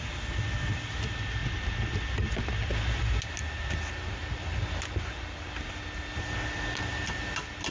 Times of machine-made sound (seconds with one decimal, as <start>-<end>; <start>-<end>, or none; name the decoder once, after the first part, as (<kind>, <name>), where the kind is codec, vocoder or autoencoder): none